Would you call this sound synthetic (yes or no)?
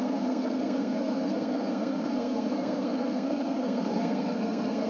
yes